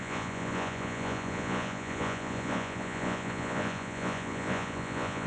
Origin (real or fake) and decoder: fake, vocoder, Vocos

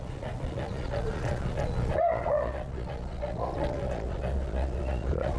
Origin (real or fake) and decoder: fake, vocoder, Vocos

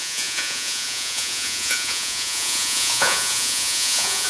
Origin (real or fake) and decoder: fake, vocoder, Vocos